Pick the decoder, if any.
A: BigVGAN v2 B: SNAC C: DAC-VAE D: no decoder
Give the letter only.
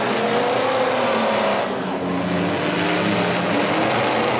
D